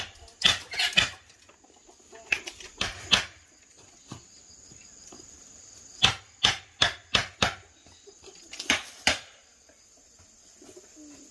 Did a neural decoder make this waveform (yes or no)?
no